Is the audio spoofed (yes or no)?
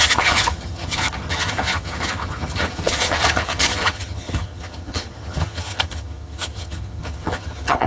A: yes